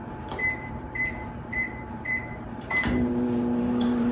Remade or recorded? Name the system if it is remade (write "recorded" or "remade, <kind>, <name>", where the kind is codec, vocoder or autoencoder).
remade, vocoder, BigVGAN v2